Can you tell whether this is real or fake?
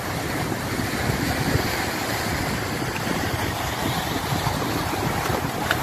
fake